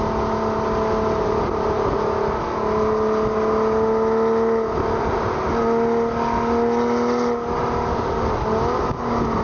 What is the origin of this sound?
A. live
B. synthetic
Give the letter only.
A